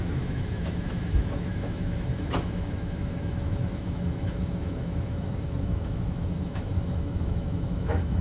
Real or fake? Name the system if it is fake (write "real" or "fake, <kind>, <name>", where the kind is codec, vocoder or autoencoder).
fake, autoencoder, DAC-VAE